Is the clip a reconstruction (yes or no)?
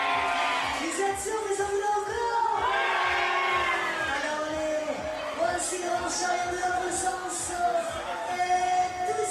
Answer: no